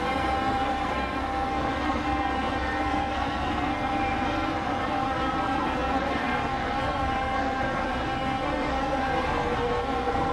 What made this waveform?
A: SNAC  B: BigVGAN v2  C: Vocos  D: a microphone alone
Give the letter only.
A